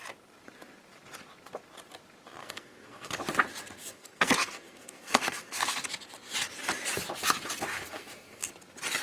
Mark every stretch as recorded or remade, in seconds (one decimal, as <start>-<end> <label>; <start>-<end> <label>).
0.0-2.4 recorded; 2.4-3.1 remade; 3.1-3.8 recorded; 3.8-5.7 remade; 5.7-7.7 recorded; 7.7-8.5 remade; 8.5-9.0 recorded